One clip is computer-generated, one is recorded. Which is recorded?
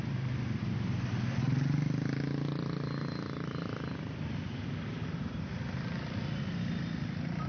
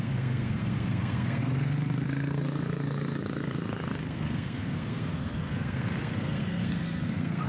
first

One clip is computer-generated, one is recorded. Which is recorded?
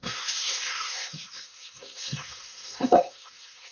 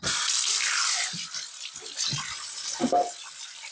second